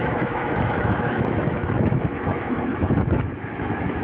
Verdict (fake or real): fake